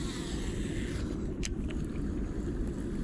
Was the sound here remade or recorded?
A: recorded